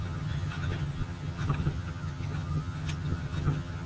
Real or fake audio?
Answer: fake